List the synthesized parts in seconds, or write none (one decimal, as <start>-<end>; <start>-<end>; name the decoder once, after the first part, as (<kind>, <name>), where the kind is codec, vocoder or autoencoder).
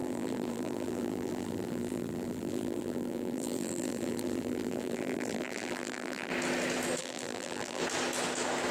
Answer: 0.0-6.3 (vocoder, BigVGAN v2); 7.0-7.8